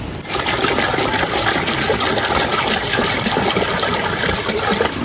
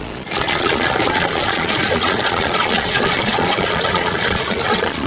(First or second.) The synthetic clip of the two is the second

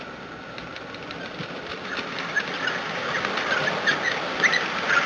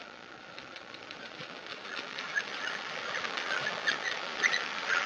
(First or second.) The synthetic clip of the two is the second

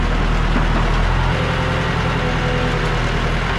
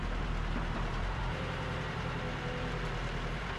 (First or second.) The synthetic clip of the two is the second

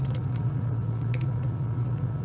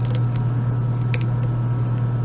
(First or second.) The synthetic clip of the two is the first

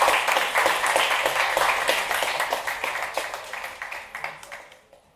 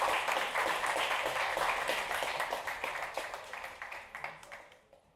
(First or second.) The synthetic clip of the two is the second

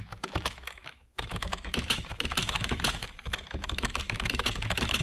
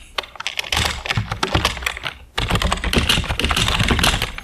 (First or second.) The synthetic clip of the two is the first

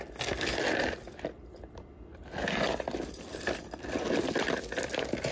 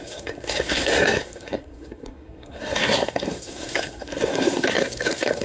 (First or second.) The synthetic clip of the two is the second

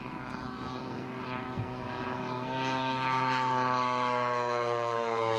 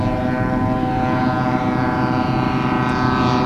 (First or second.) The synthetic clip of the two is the first